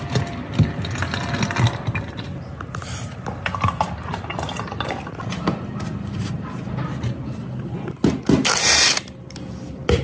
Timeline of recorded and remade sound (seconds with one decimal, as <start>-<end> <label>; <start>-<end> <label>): 0.0-7.4 recorded; 7.4-7.9 remade; 7.9-10.0 recorded